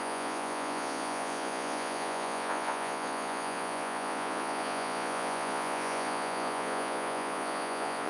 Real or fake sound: fake